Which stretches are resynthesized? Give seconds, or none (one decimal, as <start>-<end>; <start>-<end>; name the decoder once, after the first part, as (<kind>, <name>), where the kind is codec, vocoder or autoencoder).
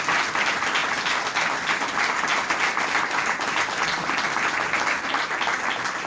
none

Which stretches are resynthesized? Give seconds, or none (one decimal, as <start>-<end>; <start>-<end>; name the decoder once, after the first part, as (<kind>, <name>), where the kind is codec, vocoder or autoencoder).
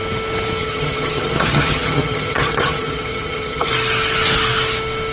0.6-3.7 (vocoder, HiFi-GAN)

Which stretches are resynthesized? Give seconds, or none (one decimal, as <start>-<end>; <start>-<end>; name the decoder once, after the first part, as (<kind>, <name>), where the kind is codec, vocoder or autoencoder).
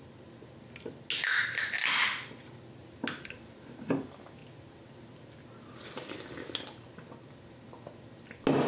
none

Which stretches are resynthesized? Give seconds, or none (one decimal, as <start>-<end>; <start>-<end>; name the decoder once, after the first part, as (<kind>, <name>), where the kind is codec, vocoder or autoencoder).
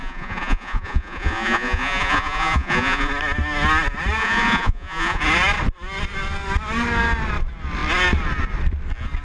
0.0-3.1 (vocoder, Vocos); 4.2-5.2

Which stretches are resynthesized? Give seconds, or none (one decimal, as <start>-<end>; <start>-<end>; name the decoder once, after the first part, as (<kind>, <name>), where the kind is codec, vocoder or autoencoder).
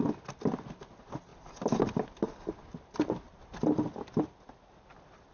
none